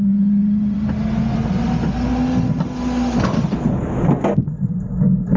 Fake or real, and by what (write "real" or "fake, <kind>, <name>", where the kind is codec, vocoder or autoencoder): real